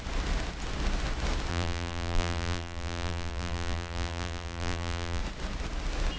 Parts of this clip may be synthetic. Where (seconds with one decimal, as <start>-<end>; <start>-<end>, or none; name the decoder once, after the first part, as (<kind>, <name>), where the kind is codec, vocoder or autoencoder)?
1.5-5.2 (vocoder, BigVGAN v2)